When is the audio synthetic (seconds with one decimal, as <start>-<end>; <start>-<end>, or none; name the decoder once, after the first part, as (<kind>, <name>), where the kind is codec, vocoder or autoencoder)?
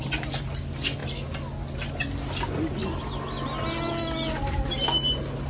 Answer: none